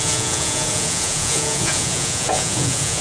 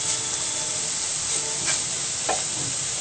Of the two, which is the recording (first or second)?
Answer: second